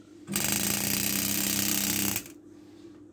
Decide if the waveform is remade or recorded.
recorded